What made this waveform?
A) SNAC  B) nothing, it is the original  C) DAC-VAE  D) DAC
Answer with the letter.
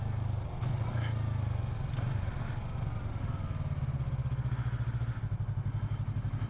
B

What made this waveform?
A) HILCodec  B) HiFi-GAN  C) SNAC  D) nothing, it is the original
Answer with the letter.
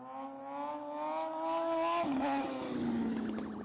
D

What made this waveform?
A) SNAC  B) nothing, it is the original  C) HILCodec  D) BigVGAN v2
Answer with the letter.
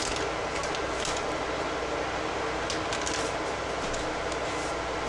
B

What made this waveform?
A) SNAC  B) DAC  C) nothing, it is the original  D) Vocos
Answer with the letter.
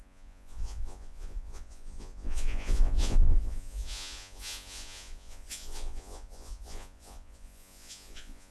D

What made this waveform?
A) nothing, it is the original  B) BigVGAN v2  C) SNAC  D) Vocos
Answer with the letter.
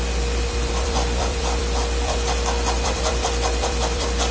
B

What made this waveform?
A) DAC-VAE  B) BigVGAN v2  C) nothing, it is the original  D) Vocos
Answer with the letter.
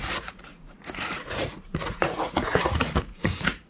D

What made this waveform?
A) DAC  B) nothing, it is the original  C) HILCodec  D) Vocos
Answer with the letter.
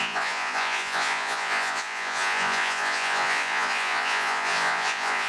D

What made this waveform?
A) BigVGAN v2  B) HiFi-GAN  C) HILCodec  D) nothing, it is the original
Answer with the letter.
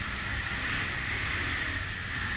A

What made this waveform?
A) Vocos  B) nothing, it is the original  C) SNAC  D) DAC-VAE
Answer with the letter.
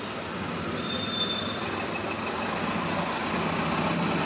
B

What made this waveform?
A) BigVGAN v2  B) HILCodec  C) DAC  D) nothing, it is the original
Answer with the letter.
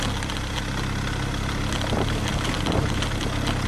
D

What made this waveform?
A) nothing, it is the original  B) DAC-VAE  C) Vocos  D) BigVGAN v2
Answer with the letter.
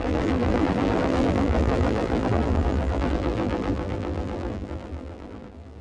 D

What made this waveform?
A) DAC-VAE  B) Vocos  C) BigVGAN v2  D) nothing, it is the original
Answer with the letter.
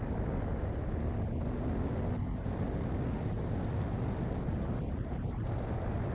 D